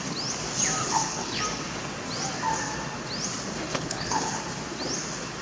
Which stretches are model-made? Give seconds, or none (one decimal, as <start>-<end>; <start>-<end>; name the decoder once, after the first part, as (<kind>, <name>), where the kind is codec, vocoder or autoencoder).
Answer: 0.8-1.4 (codec, HILCodec); 3.7-4.4